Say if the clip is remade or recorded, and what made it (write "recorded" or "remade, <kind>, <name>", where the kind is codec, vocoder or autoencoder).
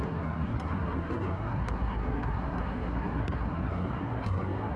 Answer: remade, codec, SNAC